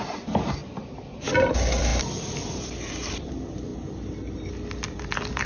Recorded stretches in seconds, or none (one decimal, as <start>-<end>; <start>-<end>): 3.7-4.7